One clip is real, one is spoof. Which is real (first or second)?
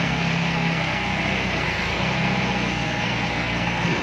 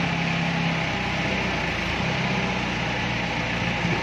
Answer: second